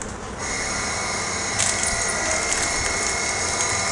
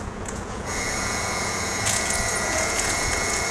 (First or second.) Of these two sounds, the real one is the first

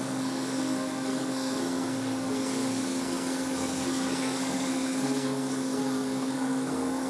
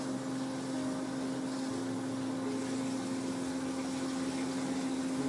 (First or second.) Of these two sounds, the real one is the second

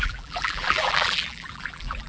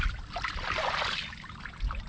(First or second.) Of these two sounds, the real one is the second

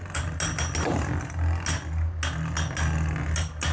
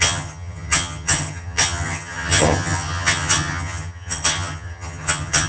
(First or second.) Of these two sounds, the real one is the first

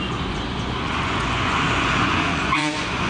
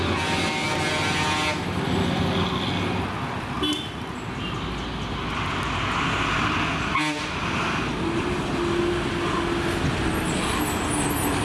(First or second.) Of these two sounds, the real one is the second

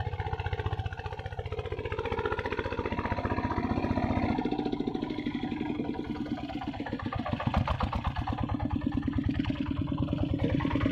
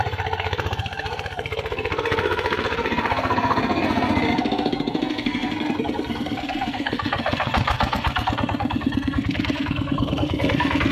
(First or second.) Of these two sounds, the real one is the first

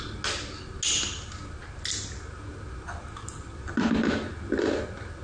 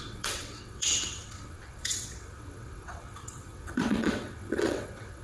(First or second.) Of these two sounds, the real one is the first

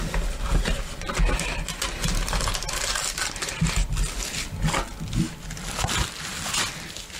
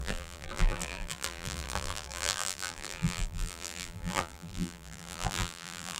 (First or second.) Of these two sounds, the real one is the first